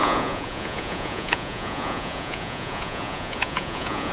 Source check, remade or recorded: remade